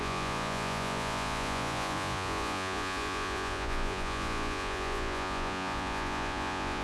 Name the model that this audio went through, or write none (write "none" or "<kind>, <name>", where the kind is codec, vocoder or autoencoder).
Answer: vocoder, Vocos